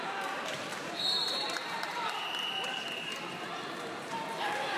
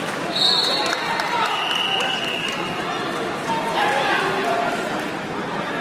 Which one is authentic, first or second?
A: second